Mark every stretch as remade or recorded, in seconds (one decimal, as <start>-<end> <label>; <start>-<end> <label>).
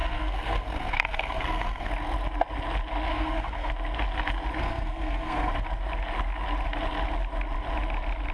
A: 0.0-1.9 remade; 1.9-3.1 recorded; 3.1-3.7 remade; 3.7-4.6 recorded; 4.6-5.5 remade; 5.5-8.3 recorded